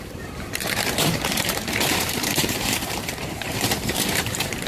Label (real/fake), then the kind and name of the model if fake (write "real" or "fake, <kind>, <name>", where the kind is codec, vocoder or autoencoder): fake, vocoder, BigVGAN v2